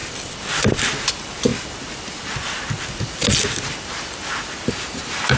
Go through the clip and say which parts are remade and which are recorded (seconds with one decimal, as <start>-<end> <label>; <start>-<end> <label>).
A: 0.0-1.1 recorded; 1.1-1.5 remade; 1.5-4.7 recorded; 4.7-5.4 remade